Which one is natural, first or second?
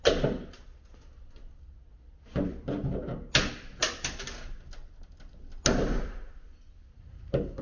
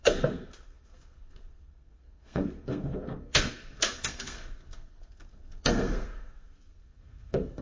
first